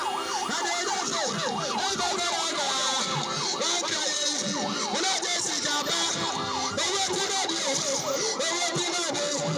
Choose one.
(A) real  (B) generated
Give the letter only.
A